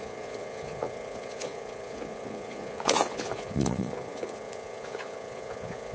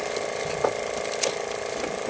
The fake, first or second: first